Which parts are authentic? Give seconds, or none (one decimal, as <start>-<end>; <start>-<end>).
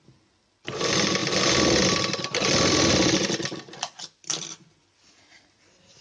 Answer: 0.0-6.0